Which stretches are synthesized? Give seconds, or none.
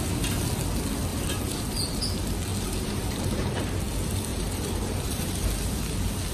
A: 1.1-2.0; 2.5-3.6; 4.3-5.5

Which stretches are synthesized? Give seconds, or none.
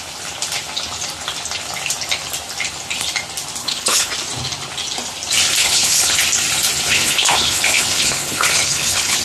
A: 3.6-4.1; 5.6-6.2; 6.9-9.2